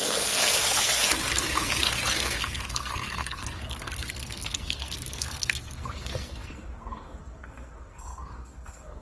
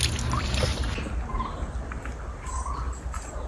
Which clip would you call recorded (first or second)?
second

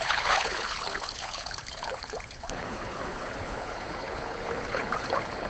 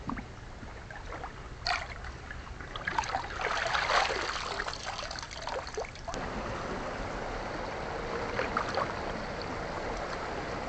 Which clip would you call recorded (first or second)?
second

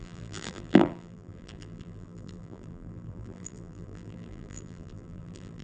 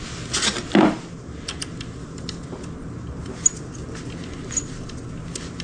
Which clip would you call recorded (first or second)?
second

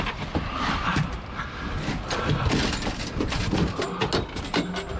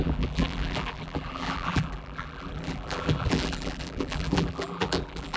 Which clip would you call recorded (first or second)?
first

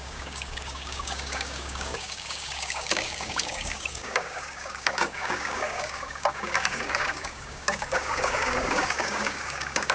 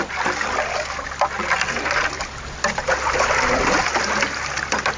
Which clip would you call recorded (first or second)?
second